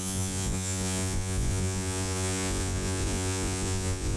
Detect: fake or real fake